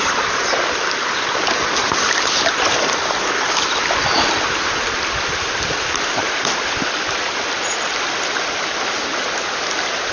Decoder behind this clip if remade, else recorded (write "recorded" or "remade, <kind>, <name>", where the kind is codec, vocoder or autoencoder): recorded